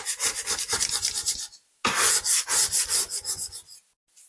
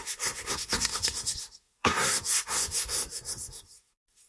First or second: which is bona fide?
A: first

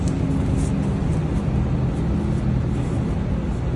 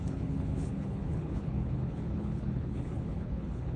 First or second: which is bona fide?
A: first